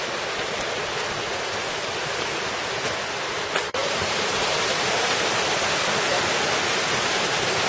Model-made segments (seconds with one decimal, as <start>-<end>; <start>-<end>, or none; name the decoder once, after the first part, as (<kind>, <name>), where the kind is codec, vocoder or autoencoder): 3.8-4.4 (vocoder, BigVGAN v2)